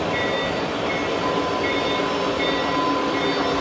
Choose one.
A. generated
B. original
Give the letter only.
B